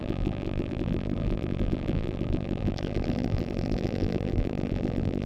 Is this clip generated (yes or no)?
yes